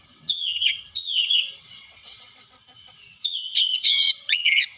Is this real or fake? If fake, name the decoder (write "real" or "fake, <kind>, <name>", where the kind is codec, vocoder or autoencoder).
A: fake, vocoder, WaveNeXt